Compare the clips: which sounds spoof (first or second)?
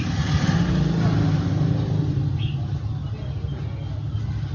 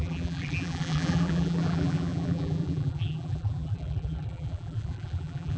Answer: second